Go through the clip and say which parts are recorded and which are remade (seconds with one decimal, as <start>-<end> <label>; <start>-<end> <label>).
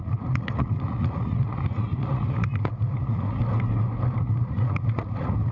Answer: 0.0-3.4 remade; 3.4-4.2 recorded; 4.2-5.5 remade